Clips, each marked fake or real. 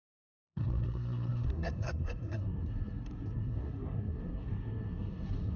fake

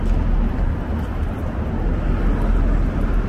real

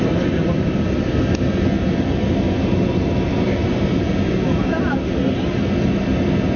real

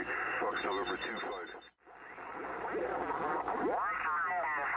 real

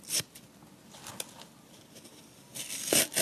real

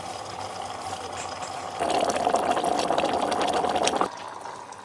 real